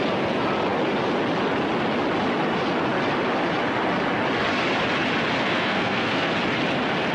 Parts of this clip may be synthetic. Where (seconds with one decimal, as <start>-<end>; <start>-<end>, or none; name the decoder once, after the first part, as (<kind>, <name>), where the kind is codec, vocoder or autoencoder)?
5.4-6.3 (codec, SNAC)